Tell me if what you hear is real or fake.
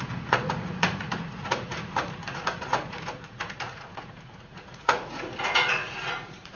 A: fake